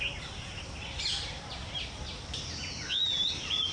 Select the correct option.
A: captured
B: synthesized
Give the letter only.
A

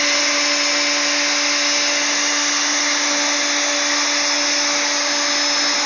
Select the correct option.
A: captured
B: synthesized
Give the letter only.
A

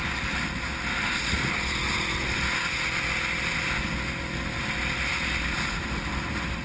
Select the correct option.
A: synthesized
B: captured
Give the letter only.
B